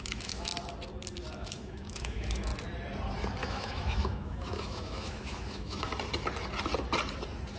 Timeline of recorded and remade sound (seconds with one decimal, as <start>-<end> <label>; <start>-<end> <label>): 0.0-0.5 remade; 0.5-1.4 recorded; 1.4-2.5 remade; 2.5-3.4 recorded; 3.4-5.9 remade; 5.9-7.6 recorded